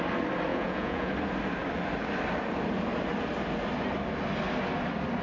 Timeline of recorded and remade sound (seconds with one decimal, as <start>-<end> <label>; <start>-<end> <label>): 0.0-0.5 recorded; 0.5-1.1 remade; 1.1-5.2 recorded